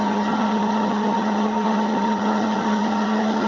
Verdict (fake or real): fake